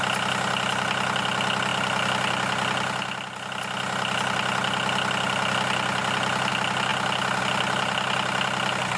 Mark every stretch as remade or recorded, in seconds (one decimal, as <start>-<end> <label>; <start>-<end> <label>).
0.0-9.0 recorded